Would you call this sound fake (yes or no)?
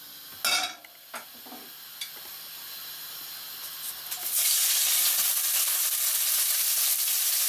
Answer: no